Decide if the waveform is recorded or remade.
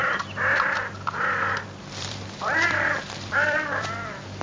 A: remade